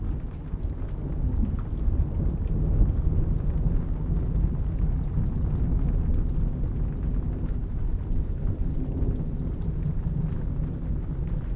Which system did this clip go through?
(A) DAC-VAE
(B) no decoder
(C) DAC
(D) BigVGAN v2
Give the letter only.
B